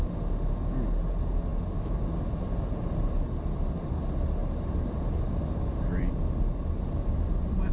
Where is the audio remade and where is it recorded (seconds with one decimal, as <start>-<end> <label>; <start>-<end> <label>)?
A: 0.0-4.4 recorded; 4.4-7.7 remade